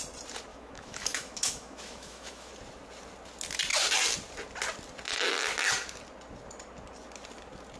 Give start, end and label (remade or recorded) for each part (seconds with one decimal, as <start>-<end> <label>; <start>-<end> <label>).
0.0-0.5 recorded; 0.5-2.5 remade; 2.5-7.8 recorded